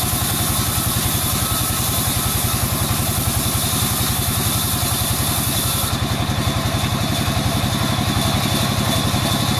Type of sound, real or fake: real